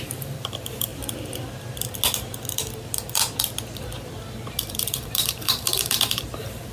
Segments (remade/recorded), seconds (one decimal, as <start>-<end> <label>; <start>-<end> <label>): 0.0-0.9 remade; 0.9-4.7 recorded; 4.7-6.7 remade